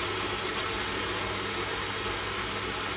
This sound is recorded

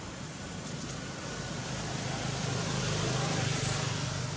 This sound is recorded